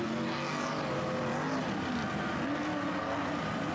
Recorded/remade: recorded